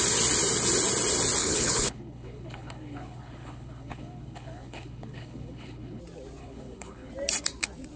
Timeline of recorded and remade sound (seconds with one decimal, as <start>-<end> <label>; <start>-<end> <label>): 0.0-1.4 recorded; 1.4-6.0 remade; 6.0-6.4 recorded; 6.4-7.1 remade; 7.1-8.0 recorded